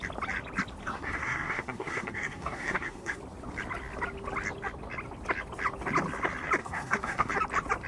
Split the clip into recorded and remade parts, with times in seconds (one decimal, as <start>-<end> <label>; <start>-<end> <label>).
0.0-0.8 recorded; 0.8-3.2 remade; 3.2-6.6 recorded; 6.6-7.3 remade; 7.3-7.9 recorded